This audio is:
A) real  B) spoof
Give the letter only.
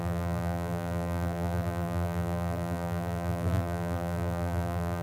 B